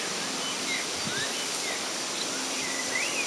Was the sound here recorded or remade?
recorded